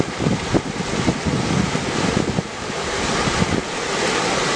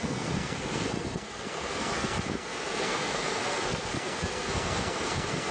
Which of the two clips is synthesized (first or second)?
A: second